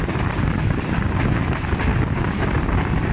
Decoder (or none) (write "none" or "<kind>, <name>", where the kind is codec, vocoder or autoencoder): vocoder, BigVGAN v2